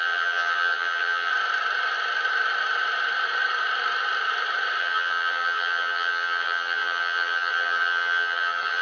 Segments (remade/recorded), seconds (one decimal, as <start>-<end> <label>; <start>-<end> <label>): 0.0-1.3 remade; 1.3-4.8 recorded; 4.8-8.8 remade